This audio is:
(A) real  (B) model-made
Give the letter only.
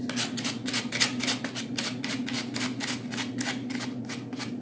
A